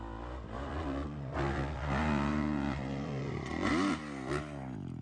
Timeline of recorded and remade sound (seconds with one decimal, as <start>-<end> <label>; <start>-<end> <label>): 0.0-0.7 recorded; 0.7-3.7 remade; 3.7-5.0 recorded